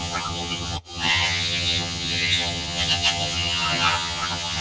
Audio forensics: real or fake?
fake